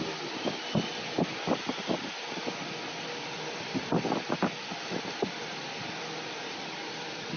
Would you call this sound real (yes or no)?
yes